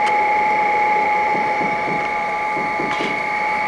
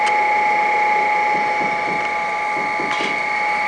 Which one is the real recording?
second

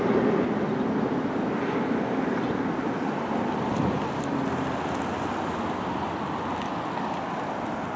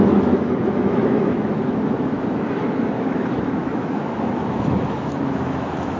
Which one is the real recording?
first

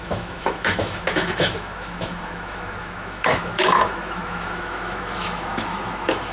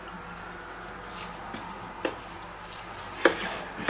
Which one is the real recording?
second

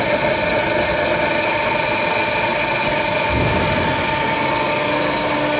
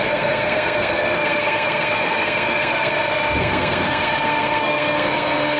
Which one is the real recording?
first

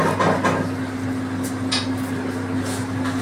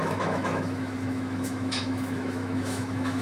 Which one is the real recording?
first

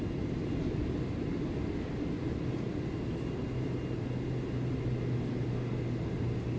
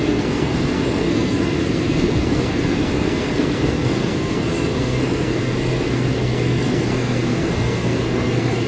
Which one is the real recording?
first